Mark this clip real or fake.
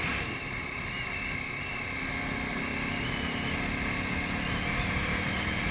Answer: real